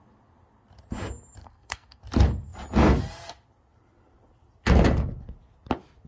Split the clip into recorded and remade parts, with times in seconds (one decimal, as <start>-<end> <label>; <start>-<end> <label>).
0.0-1.4 recorded; 1.4-2.0 remade; 2.0-6.1 recorded